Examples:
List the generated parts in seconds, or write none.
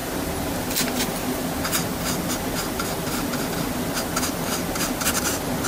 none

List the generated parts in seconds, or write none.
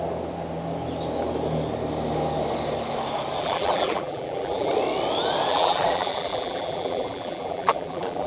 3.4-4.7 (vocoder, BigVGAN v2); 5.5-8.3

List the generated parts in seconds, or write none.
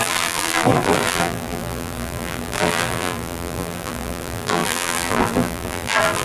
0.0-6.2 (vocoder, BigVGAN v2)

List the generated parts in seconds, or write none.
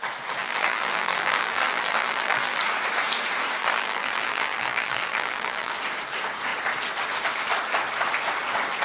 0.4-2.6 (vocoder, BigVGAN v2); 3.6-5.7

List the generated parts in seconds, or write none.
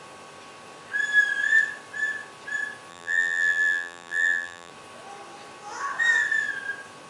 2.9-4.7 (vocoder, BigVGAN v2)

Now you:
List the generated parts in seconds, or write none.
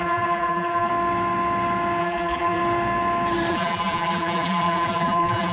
0.0-0.9 (vocoder, BigVGAN v2); 2.0-2.6; 3.5-5.5